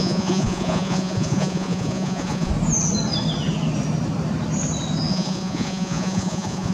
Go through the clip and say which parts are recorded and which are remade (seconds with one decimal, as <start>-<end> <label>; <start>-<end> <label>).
0.0-2.5 remade; 2.5-5.1 recorded; 5.1-6.7 remade

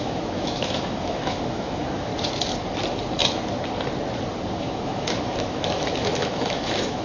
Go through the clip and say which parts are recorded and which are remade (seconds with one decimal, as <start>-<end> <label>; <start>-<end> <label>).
0.0-2.1 remade; 2.1-4.6 recorded; 4.6-7.0 remade

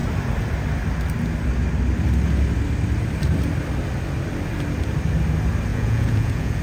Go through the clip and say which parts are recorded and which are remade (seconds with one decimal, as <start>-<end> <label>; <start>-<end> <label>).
0.0-5.7 recorded; 5.7-6.6 remade

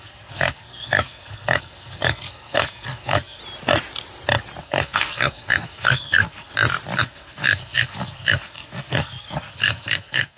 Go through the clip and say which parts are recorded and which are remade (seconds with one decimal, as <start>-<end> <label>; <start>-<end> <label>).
0.0-3.4 remade; 3.4-4.6 recorded; 4.6-6.5 remade; 6.5-7.0 recorded; 7.0-10.4 remade

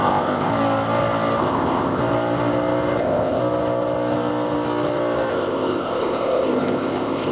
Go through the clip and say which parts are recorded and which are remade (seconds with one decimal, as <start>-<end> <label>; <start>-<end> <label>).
0.0-0.5 remade; 0.5-1.4 recorded; 1.4-2.0 remade; 2.0-3.0 recorded; 3.0-3.4 remade; 3.4-5.3 recorded; 5.3-7.3 remade

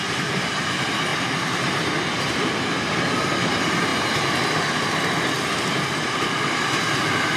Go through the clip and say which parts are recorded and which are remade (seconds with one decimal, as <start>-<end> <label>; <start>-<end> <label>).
0.0-1.1 recorded; 1.1-2.2 remade; 2.2-7.4 recorded

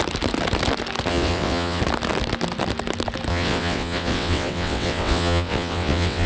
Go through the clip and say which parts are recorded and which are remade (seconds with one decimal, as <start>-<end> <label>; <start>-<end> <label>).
0.0-1.1 recorded; 1.1-1.8 remade; 1.8-3.3 recorded; 3.3-6.3 remade